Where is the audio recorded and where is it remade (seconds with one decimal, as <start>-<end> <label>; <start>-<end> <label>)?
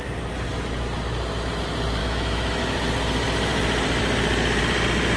0.0-2.0 recorded; 2.0-2.6 remade; 2.6-5.2 recorded